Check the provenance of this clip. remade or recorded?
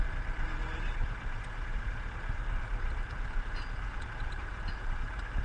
recorded